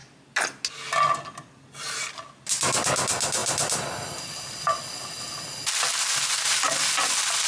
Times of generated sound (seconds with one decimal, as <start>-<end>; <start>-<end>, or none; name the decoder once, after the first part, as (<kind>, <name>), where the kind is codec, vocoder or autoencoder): 3.4-5.6 (vocoder, BigVGAN v2)